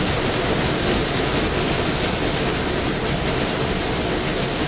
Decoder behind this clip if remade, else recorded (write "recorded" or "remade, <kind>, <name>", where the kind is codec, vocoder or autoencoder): recorded